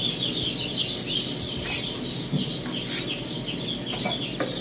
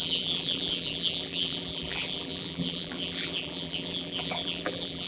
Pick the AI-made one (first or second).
second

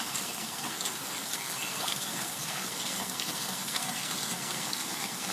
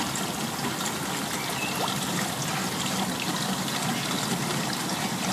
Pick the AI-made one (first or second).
first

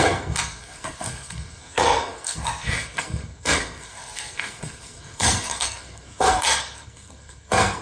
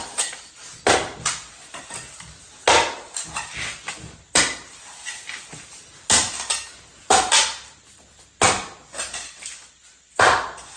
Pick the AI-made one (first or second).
first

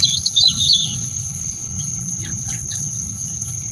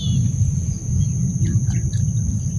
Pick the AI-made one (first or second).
first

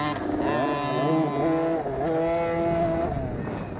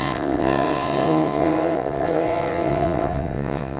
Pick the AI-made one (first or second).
second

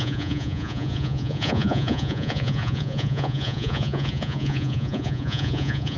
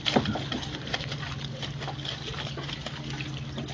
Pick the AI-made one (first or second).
first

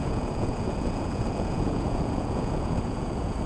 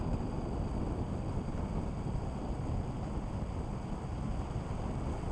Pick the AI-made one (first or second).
first